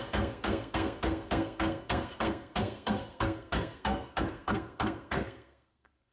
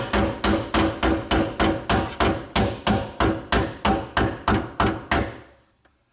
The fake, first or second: first